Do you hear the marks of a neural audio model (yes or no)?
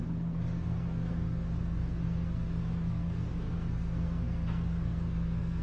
yes